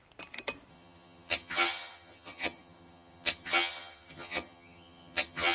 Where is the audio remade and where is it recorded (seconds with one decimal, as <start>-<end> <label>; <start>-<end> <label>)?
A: 0.0-0.7 recorded; 0.7-5.5 remade